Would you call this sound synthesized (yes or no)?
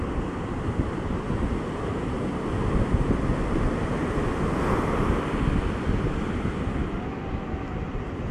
no